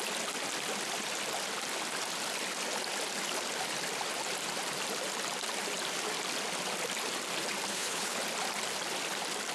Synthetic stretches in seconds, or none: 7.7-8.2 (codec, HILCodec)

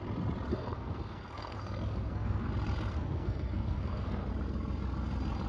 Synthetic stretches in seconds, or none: 0.5-2.5 (codec, SNAC); 2.9-4.3

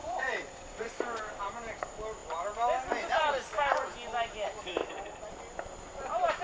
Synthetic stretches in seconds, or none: 0.0-0.9 (vocoder, Vocos)

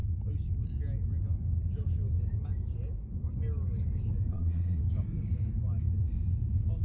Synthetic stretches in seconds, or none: 4.3-4.8 (vocoder, Vocos)